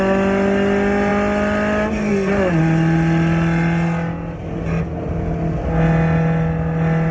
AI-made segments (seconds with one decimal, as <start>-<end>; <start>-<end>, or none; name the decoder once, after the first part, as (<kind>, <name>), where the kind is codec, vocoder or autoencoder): none